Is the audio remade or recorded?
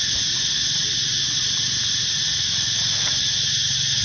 recorded